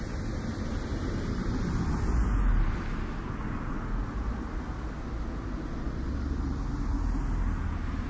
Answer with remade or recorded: recorded